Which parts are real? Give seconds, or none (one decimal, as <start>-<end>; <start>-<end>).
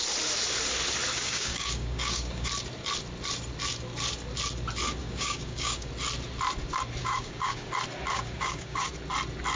0.0-1.1; 2.5-5.0; 5.9-7.0; 7.7-8.1; 8.9-9.6